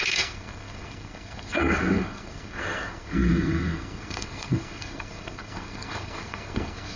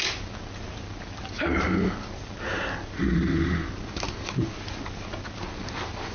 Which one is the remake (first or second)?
first